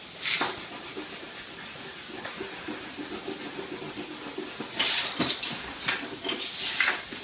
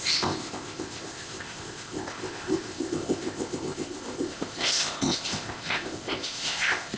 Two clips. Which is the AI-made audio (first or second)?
second